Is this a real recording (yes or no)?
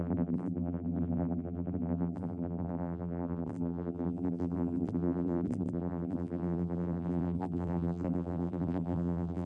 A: no